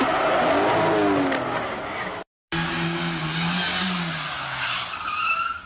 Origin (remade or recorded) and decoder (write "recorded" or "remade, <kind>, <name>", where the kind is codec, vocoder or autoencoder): recorded